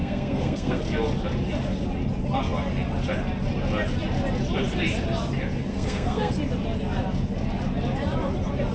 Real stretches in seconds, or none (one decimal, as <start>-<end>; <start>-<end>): 0.8-5.7; 6.3-8.7

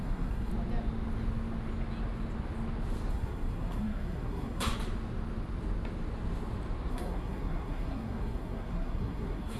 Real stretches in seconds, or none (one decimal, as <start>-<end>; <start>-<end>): 0.5-3.1; 4.7-6.9